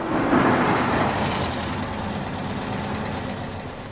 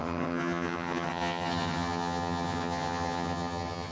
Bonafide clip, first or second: first